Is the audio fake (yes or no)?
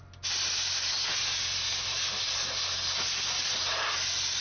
no